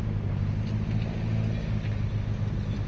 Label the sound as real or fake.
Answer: real